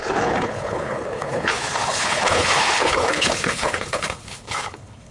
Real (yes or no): no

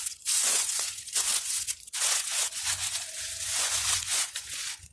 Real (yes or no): no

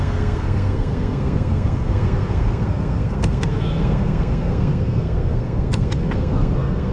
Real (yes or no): no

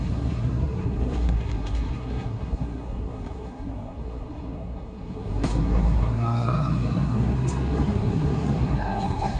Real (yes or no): no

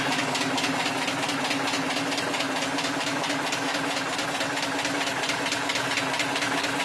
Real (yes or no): yes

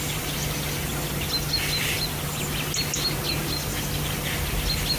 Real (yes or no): yes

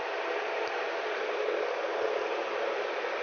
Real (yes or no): yes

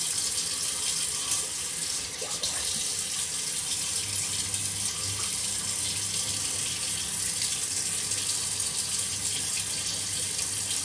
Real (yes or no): yes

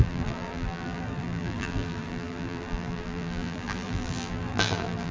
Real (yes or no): no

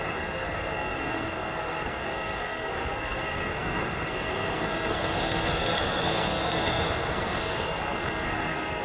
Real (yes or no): no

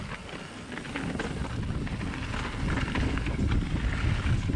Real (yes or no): yes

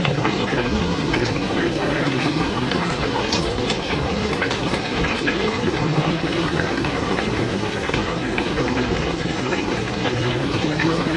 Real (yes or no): no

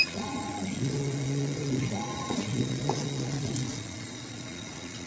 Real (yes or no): no